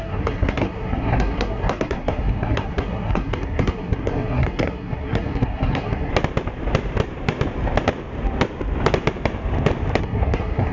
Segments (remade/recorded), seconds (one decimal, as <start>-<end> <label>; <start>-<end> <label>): 0.0-6.1 remade; 6.1-10.0 recorded; 10.0-10.7 remade